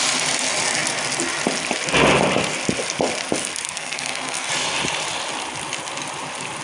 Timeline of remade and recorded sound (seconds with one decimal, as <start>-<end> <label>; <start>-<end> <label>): 0.0-3.4 recorded; 3.4-4.5 remade; 4.5-6.6 recorded